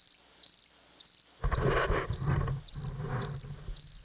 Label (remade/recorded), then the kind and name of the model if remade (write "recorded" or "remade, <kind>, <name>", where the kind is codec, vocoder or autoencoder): recorded